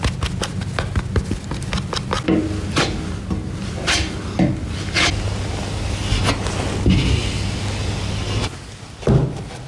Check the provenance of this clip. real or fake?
real